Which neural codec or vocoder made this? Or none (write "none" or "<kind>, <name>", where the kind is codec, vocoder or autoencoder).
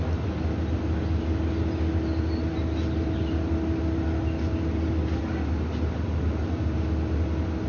none